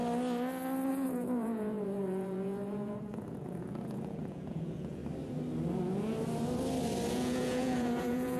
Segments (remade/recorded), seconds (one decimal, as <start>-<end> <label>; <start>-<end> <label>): 0.0-0.9 recorded; 0.9-5.0 remade; 5.0-7.1 recorded; 7.1-8.4 remade

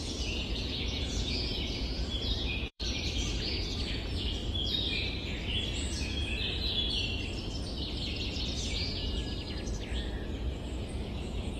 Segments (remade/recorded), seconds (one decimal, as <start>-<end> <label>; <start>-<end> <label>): 0.0-4.4 remade; 4.4-8.6 recorded; 8.6-9.2 remade; 9.2-10.8 recorded; 10.8-11.6 remade

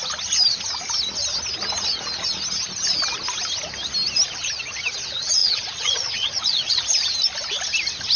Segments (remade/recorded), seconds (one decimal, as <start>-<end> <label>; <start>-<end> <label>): 0.0-5.4 recorded; 5.4-6.8 remade; 6.8-8.2 recorded

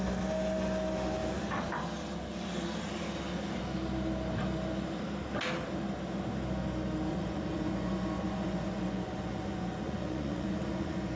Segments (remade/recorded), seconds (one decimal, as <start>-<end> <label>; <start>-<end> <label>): 0.0-7.1 recorded; 7.1-11.2 remade